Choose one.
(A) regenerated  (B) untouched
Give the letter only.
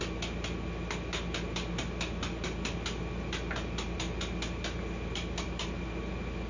B